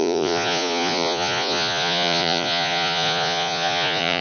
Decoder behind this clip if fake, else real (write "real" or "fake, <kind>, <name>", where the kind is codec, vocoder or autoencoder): fake, vocoder, Vocos